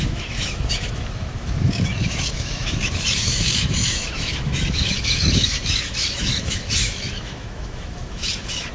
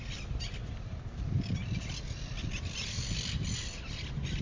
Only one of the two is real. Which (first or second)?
second